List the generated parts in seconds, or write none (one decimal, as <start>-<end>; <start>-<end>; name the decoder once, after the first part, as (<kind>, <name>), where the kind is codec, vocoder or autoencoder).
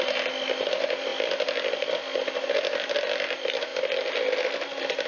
none